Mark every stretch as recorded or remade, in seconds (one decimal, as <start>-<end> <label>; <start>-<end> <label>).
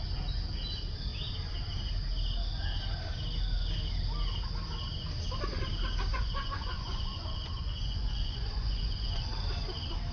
0.0-6.1 recorded; 6.1-9.3 remade; 9.3-10.1 recorded